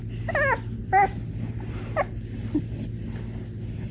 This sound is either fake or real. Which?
real